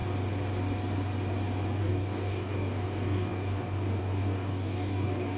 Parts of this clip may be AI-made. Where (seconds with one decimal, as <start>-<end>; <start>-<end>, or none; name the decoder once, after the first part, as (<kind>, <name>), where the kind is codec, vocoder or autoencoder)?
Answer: 1.8-5.4 (codec, DAC)